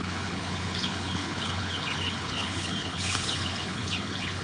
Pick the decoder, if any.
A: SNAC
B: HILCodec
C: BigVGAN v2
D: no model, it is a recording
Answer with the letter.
B